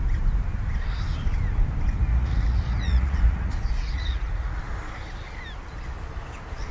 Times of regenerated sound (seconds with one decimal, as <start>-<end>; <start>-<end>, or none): 2.1-4.6